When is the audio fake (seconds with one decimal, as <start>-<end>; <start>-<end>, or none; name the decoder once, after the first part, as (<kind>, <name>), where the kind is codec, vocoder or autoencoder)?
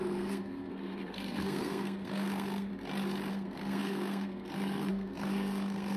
0.0-2.7 (codec, SNAC); 3.3-6.0